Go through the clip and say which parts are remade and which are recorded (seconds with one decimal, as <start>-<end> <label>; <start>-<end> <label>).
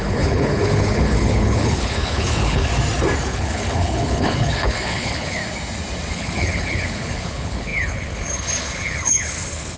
0.0-2.7 remade; 2.7-3.3 recorded; 3.3-5.4 remade; 5.4-6.1 recorded; 6.1-9.8 remade